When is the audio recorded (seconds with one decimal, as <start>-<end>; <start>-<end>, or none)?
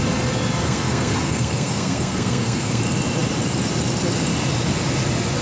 0.0-0.6; 2.8-5.4